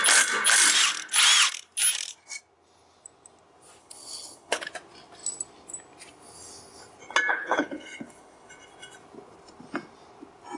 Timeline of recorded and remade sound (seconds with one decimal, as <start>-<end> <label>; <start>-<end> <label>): 0.0-3.8 recorded; 3.8-4.7 remade; 4.7-7.3 recorded; 7.3-8.5 remade; 8.5-10.6 recorded